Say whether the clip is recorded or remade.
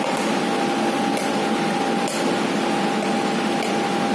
recorded